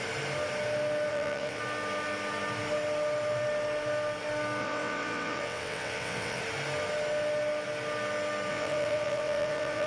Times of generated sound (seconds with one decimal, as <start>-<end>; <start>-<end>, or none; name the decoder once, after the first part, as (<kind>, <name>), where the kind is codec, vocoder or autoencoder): 1.1-1.6 (vocoder, WaveNeXt); 4.6-6.4; 8.5-9.9